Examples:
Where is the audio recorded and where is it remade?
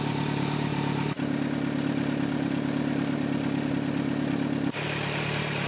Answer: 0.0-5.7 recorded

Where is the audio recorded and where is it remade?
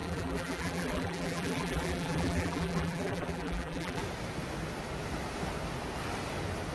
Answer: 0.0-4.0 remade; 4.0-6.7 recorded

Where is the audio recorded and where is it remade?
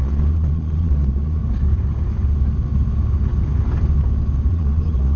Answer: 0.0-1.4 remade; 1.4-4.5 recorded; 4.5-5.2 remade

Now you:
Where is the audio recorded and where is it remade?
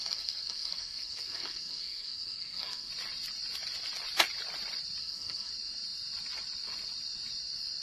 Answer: 0.0-2.9 remade; 2.9-5.0 recorded; 5.0-5.5 remade; 5.5-7.8 recorded